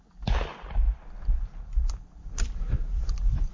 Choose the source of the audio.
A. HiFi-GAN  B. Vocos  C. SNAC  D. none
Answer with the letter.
D